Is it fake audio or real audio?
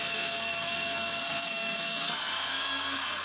fake